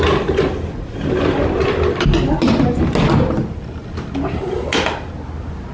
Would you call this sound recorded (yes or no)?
yes